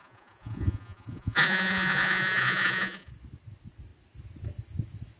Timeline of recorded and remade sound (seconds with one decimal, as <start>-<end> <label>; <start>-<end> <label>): 0.0-3.1 remade; 3.1-5.2 recorded

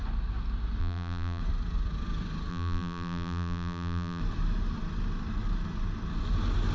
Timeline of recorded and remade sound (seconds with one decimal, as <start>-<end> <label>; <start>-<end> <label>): 0.0-0.8 recorded; 0.8-1.4 remade; 1.4-2.5 recorded; 2.5-4.2 remade; 4.2-6.7 recorded

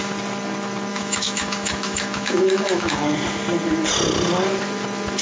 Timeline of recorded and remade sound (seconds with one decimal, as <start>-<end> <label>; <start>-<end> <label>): 0.0-0.9 recorded; 0.9-3.1 remade; 3.1-5.2 recorded

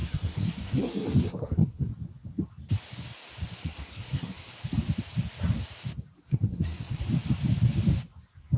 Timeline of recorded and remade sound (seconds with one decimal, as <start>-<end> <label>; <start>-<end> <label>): 0.0-1.9 remade; 1.9-3.6 recorded; 3.6-4.5 remade; 4.5-6.2 recorded; 6.2-7.0 remade; 7.0-8.6 recorded

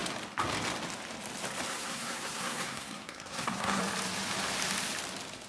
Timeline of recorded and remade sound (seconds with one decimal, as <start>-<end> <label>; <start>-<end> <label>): 0.0-1.7 recorded; 1.7-3.8 remade; 3.8-5.5 recorded